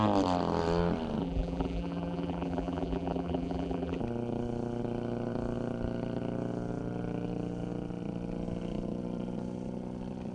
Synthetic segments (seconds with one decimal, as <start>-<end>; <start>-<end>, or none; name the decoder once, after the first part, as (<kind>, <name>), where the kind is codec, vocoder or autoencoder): 1.2-4.0 (vocoder, BigVGAN v2)